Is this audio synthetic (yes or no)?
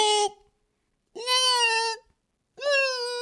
no